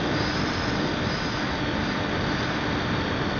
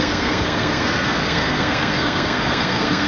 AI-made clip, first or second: second